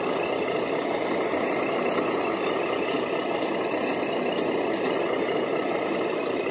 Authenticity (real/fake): real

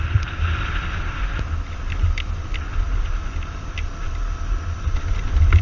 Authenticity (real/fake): real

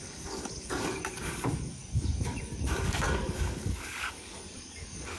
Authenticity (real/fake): fake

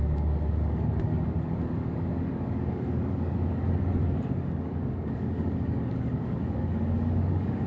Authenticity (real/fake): fake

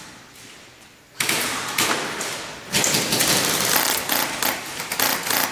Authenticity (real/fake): real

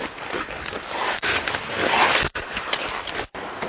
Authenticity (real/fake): real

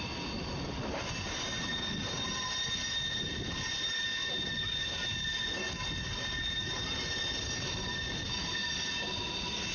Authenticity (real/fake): real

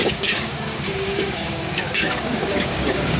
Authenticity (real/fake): fake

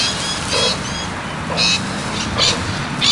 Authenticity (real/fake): real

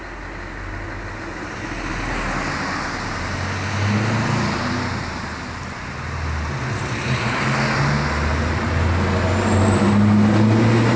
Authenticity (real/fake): real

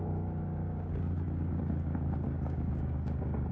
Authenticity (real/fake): fake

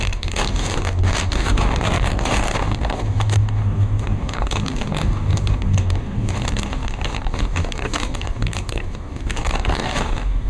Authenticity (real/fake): fake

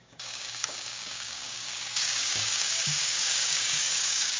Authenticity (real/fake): fake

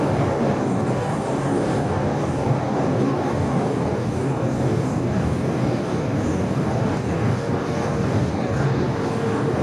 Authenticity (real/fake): fake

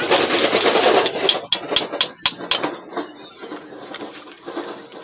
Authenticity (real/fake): real